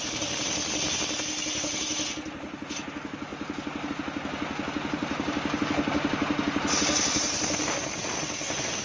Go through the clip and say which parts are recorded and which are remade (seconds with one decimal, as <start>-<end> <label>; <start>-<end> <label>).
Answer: 0.0-5.0 recorded; 5.0-5.6 remade; 5.6-8.8 recorded